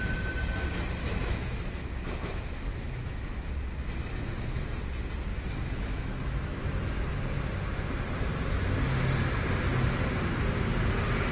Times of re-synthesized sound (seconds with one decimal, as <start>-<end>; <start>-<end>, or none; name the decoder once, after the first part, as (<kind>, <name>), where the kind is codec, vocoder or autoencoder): 1.0-2.0 (autoencoder, DAC-VAE); 2.7-3.5; 5.3-6.7